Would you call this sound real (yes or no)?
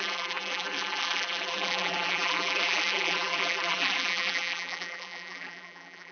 no